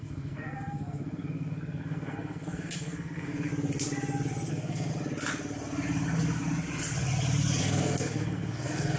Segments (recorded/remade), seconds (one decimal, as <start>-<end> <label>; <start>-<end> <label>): 0.0-3.5 remade; 3.5-4.5 recorded; 4.5-4.9 remade; 4.9-7.6 recorded; 7.6-9.0 remade